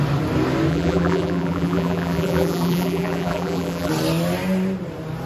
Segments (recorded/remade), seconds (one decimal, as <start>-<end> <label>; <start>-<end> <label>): 0.0-0.7 recorded; 0.7-3.9 remade; 3.9-5.3 recorded